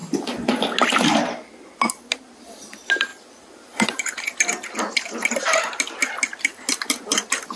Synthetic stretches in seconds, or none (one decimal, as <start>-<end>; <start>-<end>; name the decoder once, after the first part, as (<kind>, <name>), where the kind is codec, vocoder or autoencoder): 3.1-4.2 (vocoder, BigVGAN v2)